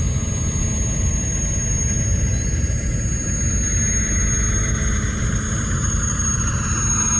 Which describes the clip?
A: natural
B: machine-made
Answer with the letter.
A